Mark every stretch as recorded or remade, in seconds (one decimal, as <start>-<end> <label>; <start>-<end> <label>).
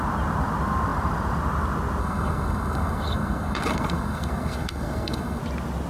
0.0-2.0 recorded; 2.0-5.4 remade; 5.4-5.9 recorded